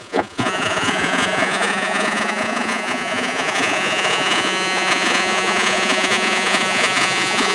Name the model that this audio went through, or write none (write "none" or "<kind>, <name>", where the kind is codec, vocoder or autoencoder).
vocoder, Vocos